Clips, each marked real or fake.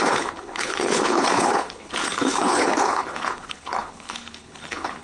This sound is fake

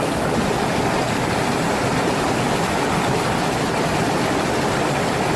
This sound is real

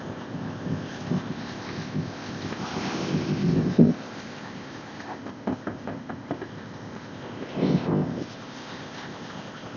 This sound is fake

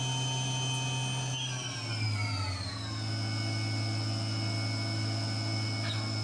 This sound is real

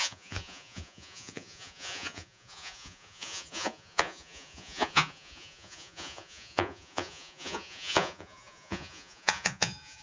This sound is fake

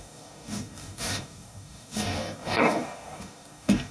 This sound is fake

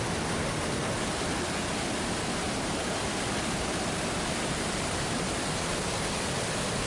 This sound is real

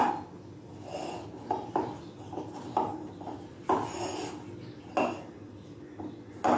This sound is real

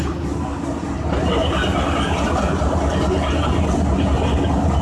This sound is real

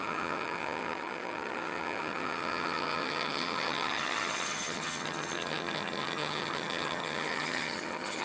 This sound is fake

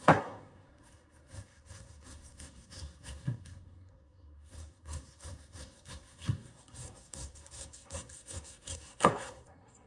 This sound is fake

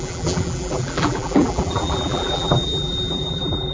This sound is fake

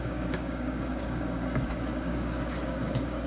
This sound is fake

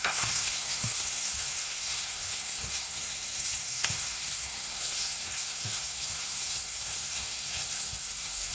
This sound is fake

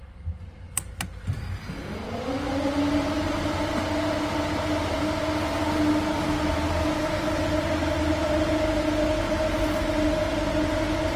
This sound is real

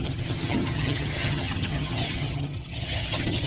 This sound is fake